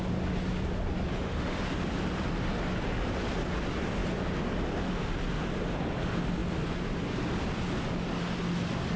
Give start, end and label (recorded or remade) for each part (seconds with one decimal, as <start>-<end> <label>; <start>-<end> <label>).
0.0-1.1 recorded; 1.1-1.6 remade; 1.6-9.0 recorded